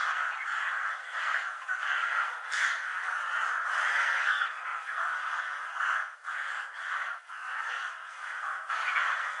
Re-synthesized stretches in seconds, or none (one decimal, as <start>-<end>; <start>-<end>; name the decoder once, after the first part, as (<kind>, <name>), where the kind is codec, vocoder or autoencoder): 0.0-3.2 (codec, SNAC); 3.9-9.4